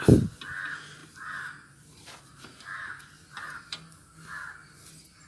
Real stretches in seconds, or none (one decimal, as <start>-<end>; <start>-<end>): 0.0-5.3